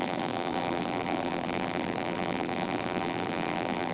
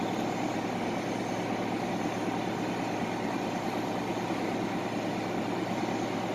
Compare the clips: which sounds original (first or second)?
second